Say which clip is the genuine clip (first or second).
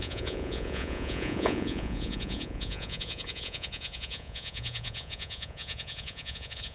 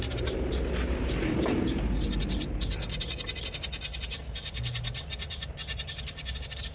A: second